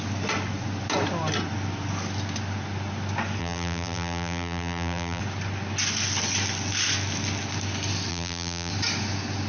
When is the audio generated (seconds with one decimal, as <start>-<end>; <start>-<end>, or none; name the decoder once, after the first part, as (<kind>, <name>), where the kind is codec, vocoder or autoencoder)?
3.4-5.2 (vocoder, BigVGAN v2); 8.1-8.7